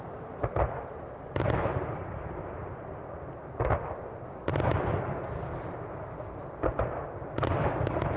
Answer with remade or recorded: recorded